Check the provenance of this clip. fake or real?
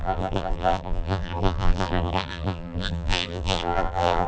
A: fake